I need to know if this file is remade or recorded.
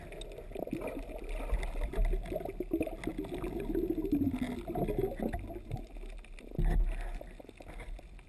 recorded